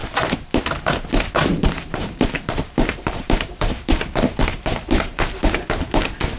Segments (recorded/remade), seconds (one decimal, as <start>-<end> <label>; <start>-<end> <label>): 0.0-1.5 recorded; 1.5-5.3 remade; 5.3-6.4 recorded